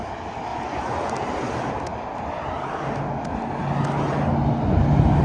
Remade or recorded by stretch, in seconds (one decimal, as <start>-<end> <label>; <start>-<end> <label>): 0.0-0.5 recorded; 0.5-1.1 remade; 1.1-5.2 recorded